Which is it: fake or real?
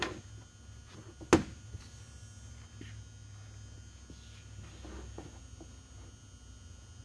real